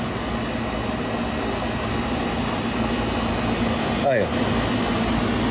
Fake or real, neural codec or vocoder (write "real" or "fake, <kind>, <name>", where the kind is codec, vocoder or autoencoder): real